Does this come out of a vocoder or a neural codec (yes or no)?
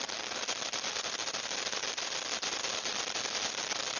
no